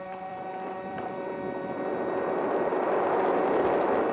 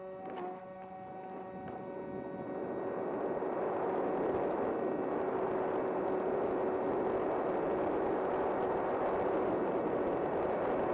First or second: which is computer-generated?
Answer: first